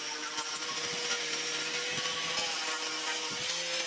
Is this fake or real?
real